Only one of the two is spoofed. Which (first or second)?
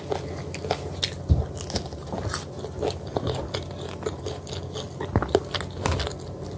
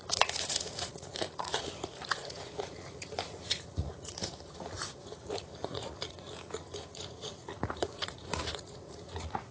second